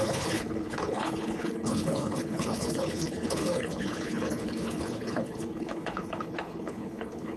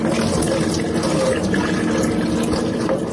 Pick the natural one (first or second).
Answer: second